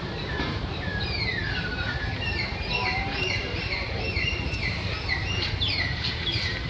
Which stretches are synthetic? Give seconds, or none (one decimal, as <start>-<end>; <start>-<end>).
0.0-6.7